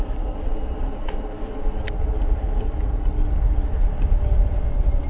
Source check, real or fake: real